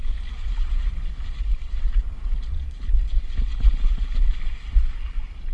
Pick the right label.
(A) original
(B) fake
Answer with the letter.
A